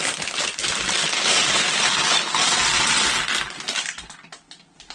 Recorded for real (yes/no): yes